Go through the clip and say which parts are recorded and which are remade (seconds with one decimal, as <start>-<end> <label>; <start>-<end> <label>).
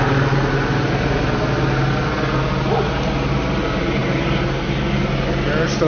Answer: 0.0-5.9 recorded